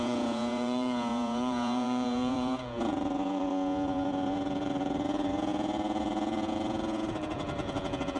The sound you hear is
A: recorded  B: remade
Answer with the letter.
B